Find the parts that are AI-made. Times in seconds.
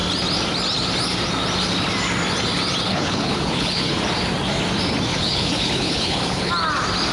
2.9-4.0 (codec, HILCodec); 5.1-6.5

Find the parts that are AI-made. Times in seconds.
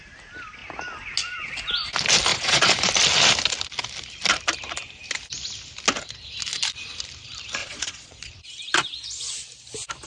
2.3-2.9 (vocoder, Vocos); 7.6-8.3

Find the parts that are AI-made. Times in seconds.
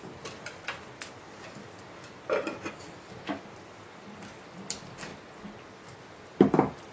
none